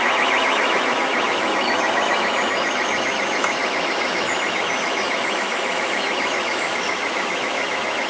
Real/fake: fake